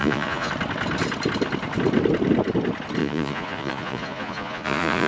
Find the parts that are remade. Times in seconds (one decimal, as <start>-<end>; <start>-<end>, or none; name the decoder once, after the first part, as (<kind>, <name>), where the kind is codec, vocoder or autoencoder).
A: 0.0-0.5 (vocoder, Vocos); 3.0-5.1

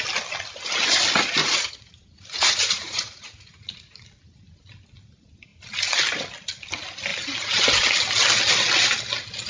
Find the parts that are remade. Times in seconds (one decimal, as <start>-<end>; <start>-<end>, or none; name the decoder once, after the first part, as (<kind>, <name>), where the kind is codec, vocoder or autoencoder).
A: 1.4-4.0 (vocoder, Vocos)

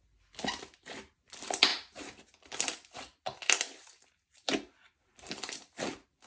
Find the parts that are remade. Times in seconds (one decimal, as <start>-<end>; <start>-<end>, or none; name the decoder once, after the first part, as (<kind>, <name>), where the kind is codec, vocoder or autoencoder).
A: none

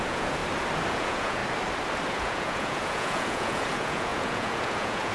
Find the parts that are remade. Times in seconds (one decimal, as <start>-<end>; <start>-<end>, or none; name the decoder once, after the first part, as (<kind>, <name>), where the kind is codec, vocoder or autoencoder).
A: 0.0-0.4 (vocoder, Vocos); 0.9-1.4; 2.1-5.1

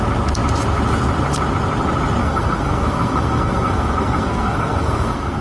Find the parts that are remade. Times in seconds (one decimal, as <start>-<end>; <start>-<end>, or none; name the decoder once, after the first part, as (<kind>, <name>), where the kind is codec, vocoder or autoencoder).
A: 2.2-5.4 (codec, SNAC)